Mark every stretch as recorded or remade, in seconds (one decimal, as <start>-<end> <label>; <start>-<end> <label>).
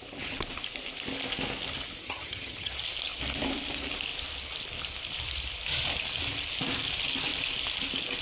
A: 0.0-2.0 recorded; 2.0-2.7 remade; 2.7-8.2 recorded